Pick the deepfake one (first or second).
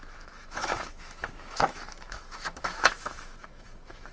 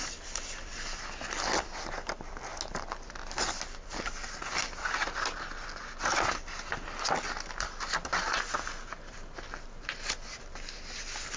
first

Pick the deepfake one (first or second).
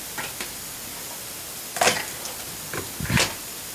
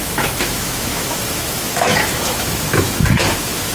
second